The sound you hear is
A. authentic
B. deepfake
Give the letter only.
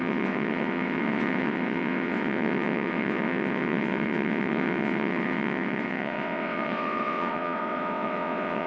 B